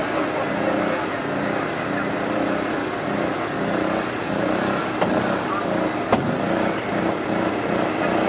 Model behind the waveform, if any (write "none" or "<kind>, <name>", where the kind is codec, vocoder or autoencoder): none